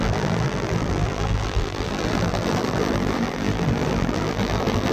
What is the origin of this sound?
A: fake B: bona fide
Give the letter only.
A